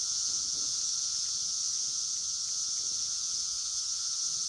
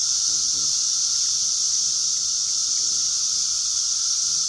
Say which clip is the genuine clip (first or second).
second